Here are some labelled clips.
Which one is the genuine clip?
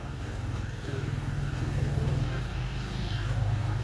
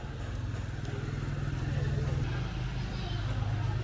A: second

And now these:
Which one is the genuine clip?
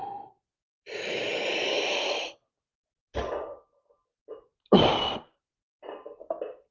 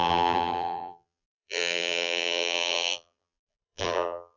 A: first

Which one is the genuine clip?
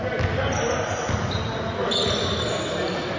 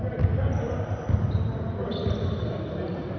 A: first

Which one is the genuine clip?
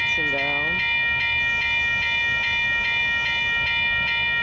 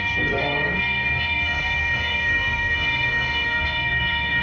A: first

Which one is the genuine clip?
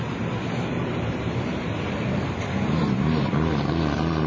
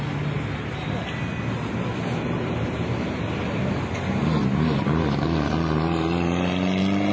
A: second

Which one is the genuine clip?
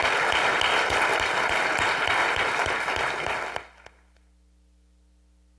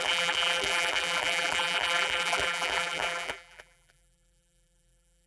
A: first